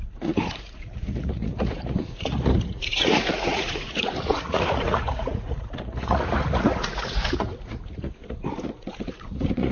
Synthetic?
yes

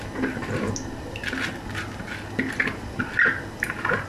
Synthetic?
no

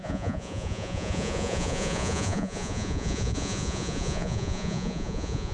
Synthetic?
yes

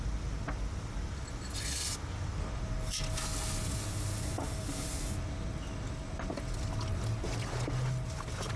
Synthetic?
no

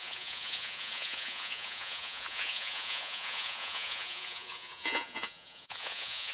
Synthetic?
yes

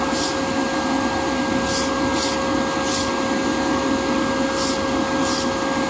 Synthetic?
no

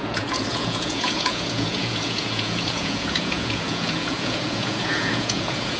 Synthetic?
yes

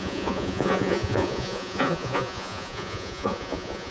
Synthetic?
yes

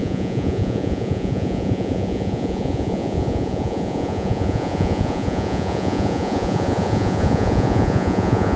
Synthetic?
yes